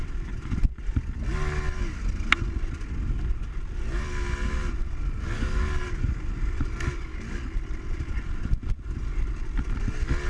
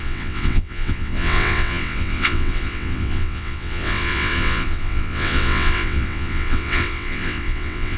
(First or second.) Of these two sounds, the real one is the first